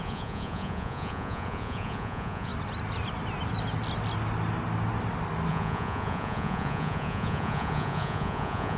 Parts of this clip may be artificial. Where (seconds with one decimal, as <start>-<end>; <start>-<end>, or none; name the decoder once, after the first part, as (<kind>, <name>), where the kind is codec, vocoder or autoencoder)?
0.0-2.5 (vocoder, Vocos); 5.5-8.8